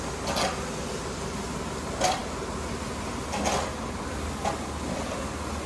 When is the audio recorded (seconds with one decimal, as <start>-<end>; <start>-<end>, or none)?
0.0-5.7